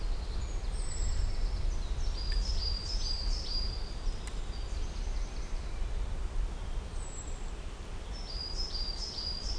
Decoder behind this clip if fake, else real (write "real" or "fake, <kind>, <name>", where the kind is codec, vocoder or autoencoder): real